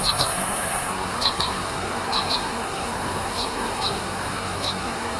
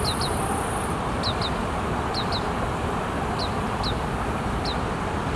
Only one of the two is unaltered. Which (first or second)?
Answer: second